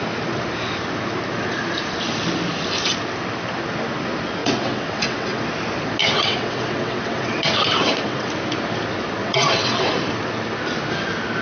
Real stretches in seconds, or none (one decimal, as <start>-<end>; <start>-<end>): 0.0-4.4; 5.4-6.0; 8.3-9.2; 9.9-11.4